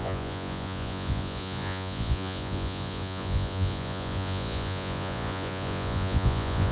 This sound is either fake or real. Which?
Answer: fake